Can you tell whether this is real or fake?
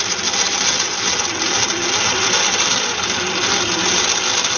real